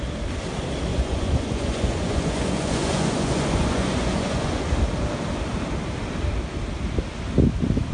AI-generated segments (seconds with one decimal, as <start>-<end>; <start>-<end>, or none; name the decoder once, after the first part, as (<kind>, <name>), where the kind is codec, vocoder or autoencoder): 0.9-4.6 (vocoder, Vocos)